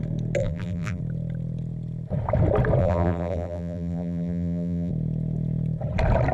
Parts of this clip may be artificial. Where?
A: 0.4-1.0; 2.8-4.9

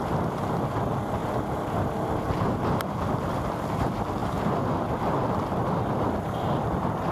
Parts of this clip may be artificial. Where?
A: none

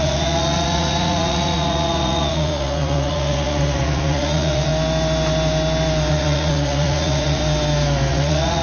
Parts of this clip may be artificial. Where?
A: 0.0-4.7; 6.1-7.4; 8.1-8.6

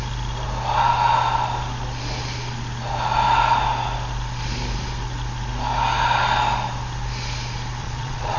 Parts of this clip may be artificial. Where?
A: 7.8-8.4

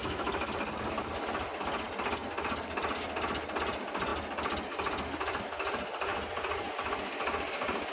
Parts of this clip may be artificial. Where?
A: 0.0-0.5

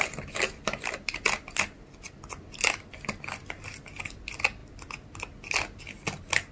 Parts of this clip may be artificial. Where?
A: none

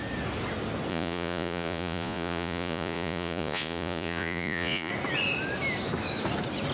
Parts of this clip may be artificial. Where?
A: 0.9-4.9